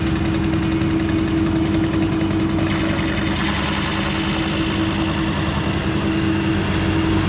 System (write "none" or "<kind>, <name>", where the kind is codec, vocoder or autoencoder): none